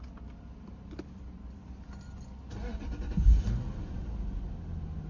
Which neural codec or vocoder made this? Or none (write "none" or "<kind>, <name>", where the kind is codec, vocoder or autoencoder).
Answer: none